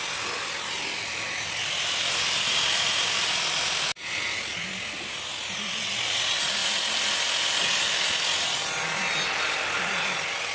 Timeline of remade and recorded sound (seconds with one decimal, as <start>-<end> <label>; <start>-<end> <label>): 0.0-10.5 recorded